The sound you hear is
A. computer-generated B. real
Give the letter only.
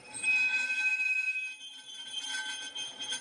A